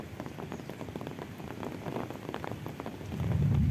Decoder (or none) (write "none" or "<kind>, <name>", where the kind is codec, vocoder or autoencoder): none